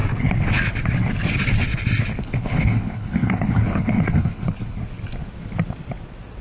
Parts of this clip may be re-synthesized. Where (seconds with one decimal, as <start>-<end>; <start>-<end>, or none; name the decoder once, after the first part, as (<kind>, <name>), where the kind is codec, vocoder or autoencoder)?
2.1-4.8 (codec, HILCodec)